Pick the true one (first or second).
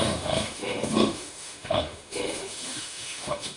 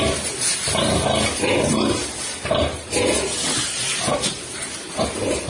second